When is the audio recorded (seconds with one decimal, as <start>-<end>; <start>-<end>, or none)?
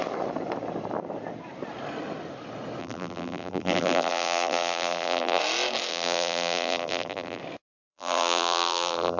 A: 0.0-2.8; 5.4-5.9; 7.4-7.9